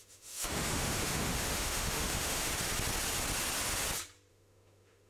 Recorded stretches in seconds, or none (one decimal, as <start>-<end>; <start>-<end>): 2.5-4.3